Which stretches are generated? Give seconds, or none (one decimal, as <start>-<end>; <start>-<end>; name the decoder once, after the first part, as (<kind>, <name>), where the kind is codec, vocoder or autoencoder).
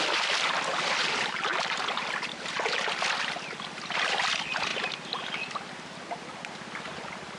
4.7-6.4 (vocoder, BigVGAN v2)